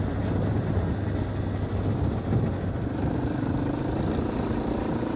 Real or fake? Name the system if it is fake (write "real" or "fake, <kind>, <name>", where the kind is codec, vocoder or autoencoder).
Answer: real